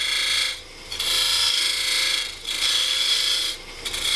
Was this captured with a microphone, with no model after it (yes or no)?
yes